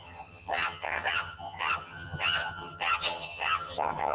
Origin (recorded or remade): remade